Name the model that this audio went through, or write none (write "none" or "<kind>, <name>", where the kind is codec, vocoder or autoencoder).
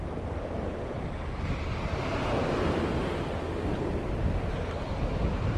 none